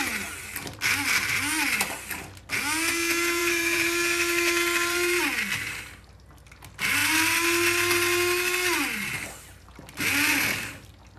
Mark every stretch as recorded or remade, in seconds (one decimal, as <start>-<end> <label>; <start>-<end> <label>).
0.0-3.4 recorded; 3.4-5.2 remade; 5.2-11.2 recorded